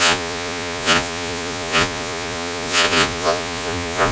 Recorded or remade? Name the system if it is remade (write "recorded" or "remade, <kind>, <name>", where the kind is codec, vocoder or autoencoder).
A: remade, vocoder, Vocos